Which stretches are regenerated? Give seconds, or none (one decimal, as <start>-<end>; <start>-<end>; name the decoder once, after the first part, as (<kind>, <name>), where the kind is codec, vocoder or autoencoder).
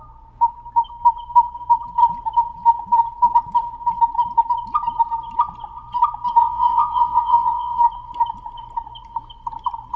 6.4-7.8 (vocoder, WaveNeXt)